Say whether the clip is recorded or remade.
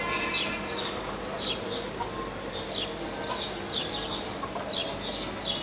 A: recorded